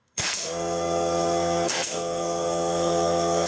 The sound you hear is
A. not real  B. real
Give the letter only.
A